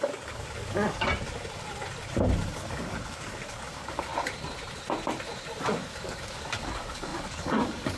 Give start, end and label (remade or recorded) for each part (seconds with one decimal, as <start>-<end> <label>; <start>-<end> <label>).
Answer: 0.0-1.1 remade; 1.1-2.6 recorded; 2.6-4.1 remade; 4.1-5.6 recorded; 5.6-8.0 remade